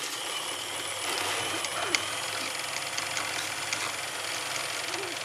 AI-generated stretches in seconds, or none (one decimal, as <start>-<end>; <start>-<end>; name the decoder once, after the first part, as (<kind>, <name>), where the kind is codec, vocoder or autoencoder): 1.7-2.4 (vocoder, BigVGAN v2)